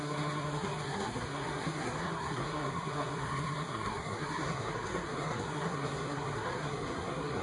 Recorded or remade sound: remade